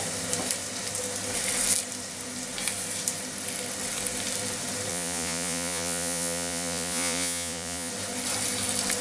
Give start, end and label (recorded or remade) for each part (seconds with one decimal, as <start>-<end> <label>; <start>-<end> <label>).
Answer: 0.0-4.9 recorded; 4.9-7.9 remade; 7.9-9.0 recorded